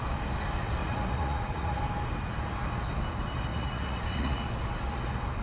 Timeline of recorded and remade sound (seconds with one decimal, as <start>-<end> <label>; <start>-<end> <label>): 0.0-0.8 recorded; 0.8-1.8 remade; 1.8-3.5 recorded; 3.5-4.5 remade; 4.5-5.4 recorded